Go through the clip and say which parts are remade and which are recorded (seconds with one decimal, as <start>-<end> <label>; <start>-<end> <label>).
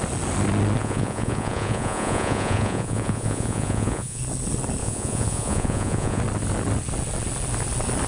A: 0.0-0.8 recorded; 0.8-4.2 remade; 4.2-4.8 recorded; 4.8-6.2 remade; 6.2-8.1 recorded